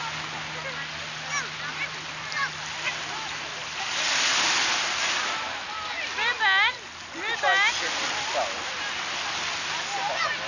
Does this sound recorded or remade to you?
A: recorded